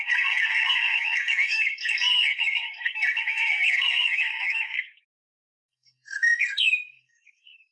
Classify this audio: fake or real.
fake